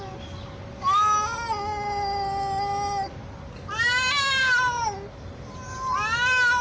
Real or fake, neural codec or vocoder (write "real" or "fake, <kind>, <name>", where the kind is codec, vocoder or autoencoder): real